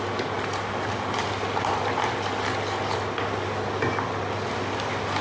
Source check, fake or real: real